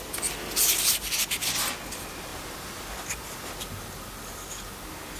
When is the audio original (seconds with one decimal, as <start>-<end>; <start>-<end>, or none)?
0.0-2.3; 4.7-5.2